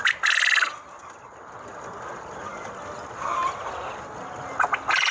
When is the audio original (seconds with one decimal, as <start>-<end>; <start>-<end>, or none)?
0.0-5.1